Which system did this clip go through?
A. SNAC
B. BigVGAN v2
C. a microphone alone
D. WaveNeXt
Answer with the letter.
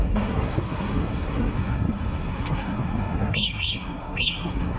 A